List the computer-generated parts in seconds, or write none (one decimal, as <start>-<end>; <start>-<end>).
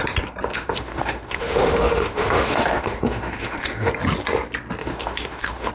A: 0.5-3.9; 4.8-5.7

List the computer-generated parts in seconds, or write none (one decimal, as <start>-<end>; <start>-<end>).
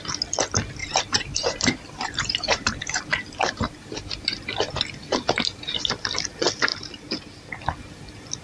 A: 0.8-5.8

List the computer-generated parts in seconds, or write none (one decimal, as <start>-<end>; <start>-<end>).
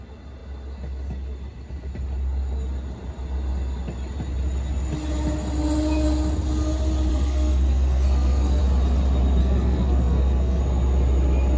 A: 7.1-8.6; 9.4-10.6